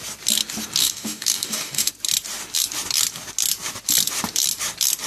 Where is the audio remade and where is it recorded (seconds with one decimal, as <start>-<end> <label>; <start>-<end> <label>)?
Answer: 0.0-0.8 recorded; 0.8-1.9 remade; 1.9-5.1 recorded